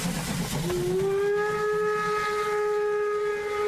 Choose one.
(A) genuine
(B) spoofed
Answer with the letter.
A